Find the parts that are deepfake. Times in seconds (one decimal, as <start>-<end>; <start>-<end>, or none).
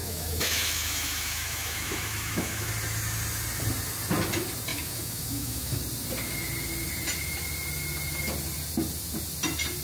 0.0-2.7; 4.7-5.8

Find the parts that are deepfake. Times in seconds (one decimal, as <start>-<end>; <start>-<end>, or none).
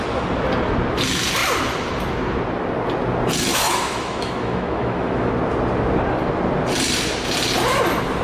3.5-5.3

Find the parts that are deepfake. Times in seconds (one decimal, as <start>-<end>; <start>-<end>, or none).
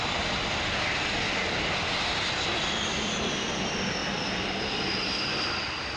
none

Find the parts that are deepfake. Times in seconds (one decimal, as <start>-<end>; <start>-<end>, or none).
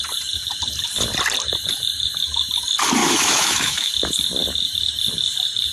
3.0-3.9